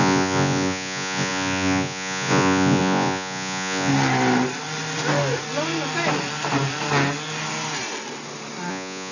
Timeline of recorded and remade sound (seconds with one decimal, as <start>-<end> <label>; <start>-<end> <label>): 0.0-3.9 remade; 3.9-8.7 recorded; 8.7-9.1 remade